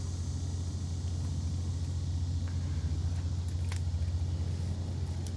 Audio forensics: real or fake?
real